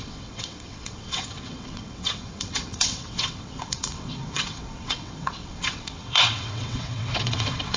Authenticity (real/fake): fake